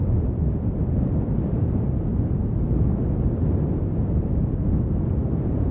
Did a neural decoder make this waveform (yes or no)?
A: yes